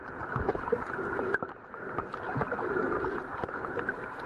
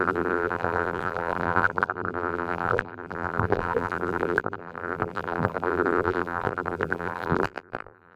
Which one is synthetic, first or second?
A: second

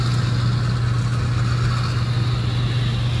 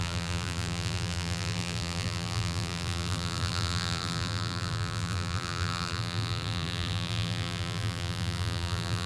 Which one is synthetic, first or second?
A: second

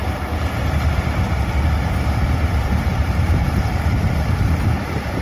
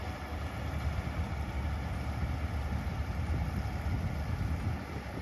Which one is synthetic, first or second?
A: first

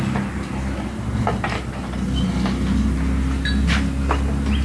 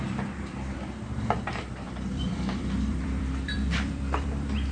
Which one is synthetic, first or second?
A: second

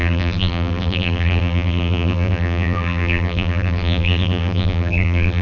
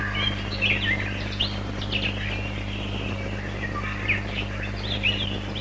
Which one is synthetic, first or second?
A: first